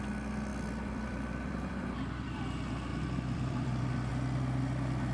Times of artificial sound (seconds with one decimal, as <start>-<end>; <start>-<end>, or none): 0.5-2.4; 2.9-4.1